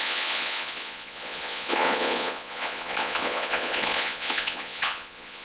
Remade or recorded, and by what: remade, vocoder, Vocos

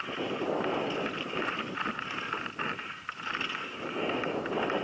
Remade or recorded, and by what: recorded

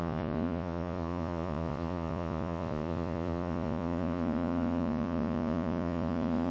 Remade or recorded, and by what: remade, vocoder, Vocos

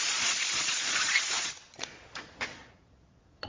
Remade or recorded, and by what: remade, vocoder, Vocos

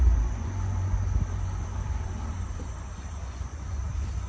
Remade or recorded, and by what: remade, vocoder, Vocos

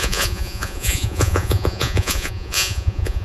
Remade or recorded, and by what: remade, vocoder, Vocos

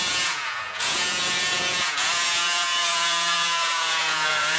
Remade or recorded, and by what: remade, vocoder, Vocos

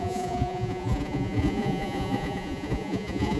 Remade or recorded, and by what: remade, vocoder, Vocos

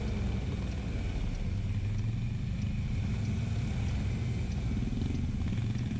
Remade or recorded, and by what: recorded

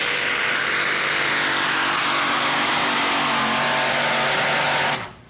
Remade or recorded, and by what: recorded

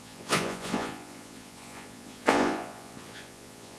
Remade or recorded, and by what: remade, vocoder, Vocos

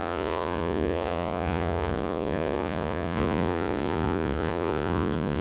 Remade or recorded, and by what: remade, vocoder, Vocos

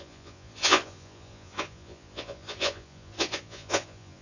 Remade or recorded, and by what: remade, vocoder, Vocos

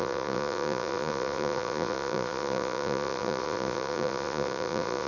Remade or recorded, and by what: remade, vocoder, Vocos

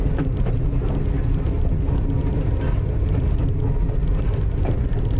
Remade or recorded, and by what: recorded